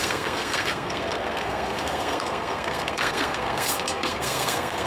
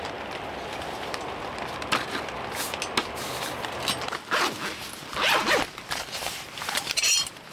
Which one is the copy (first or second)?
first